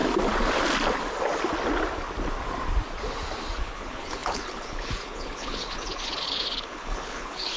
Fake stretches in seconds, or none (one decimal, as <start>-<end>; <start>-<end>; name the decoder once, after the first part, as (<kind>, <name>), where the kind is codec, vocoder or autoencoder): 3.6-7.6 (codec, HILCodec)